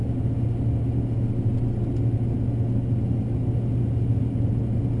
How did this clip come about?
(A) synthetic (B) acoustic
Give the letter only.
B